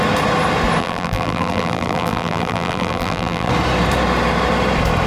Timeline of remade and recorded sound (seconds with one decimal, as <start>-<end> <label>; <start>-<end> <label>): 0.0-0.8 recorded; 0.8-3.5 remade; 3.5-5.1 recorded